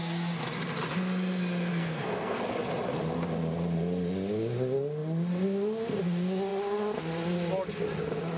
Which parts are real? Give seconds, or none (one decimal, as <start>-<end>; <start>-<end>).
0.0-1.7; 2.4-8.4